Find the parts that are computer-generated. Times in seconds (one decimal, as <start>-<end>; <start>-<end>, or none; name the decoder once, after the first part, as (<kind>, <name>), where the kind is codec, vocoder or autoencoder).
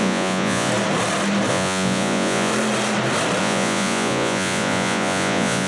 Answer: 0.0-0.7 (vocoder, Vocos); 1.5-2.5; 3.4-5.7